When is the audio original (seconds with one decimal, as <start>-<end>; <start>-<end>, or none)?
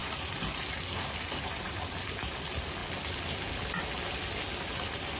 0.0-5.2